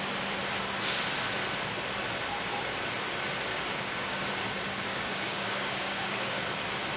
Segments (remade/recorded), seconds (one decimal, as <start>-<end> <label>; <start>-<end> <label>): 0.0-3.5 recorded; 3.5-4.2 remade; 4.2-4.9 recorded; 4.9-6.4 remade; 6.4-7.0 recorded